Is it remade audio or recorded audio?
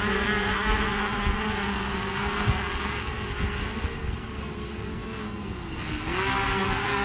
remade